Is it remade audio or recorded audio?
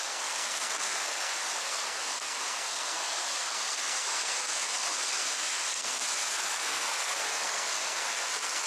remade